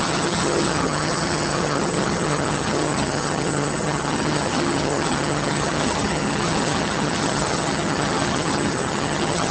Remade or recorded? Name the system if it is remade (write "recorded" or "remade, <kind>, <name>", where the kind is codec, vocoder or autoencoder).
remade, vocoder, HiFi-GAN